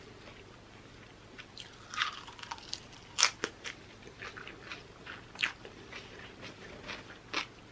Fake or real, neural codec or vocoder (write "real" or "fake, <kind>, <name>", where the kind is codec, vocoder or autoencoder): real